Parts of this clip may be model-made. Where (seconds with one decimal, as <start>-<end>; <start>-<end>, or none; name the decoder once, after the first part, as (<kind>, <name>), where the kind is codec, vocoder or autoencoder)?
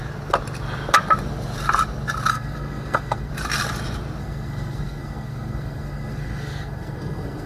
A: 2.3-3.3 (codec, SNAC); 4.2-7.5